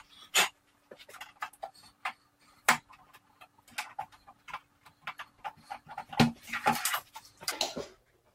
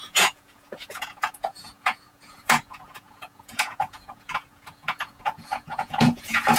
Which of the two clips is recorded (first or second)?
first